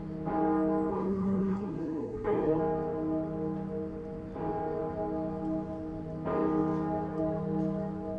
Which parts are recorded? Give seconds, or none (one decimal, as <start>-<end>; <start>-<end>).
0.0-0.9; 2.6-8.2